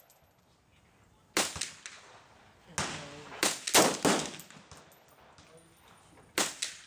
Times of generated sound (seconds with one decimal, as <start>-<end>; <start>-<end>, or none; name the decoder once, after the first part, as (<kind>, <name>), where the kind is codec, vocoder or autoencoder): none